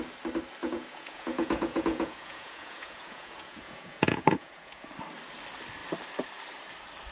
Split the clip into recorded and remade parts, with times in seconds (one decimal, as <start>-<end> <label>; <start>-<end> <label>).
0.0-0.6 recorded; 0.6-4.9 remade; 4.9-7.1 recorded